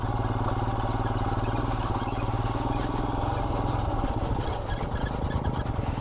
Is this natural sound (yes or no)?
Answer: yes